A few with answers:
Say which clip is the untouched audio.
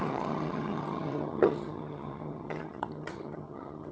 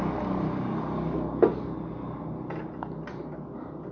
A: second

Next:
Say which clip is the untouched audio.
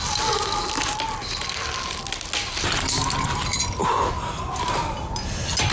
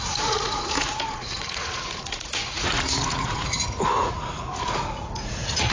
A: first